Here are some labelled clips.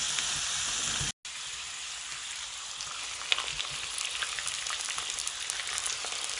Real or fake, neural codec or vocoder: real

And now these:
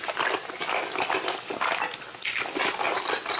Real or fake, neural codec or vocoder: real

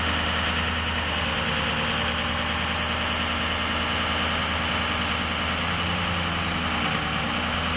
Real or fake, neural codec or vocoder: real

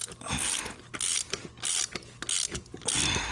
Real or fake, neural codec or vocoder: real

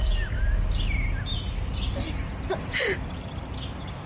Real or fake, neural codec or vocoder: real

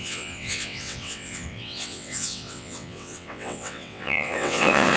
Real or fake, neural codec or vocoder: fake, vocoder, WaveNeXt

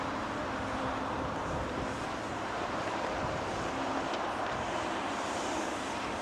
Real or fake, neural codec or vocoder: fake, vocoder, BigVGAN v2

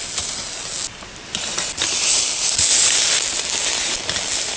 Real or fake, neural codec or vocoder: real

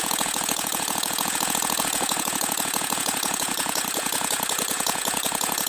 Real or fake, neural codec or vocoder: fake, vocoder, Vocos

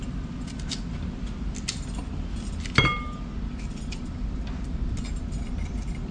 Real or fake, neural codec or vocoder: real